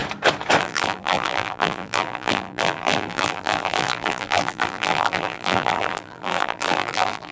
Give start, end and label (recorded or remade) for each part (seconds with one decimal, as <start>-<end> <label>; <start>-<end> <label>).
0.0-0.6 recorded; 0.6-7.3 remade